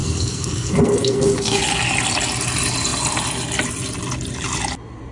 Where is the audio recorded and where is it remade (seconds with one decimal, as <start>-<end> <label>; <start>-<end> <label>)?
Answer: 0.0-1.6 remade; 1.6-5.1 recorded